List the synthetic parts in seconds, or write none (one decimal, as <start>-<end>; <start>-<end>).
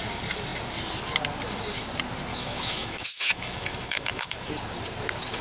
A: 2.3-4.5